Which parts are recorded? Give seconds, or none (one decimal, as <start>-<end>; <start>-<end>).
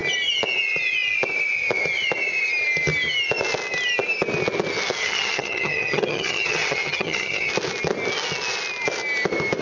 0.0-5.0; 7.5-9.6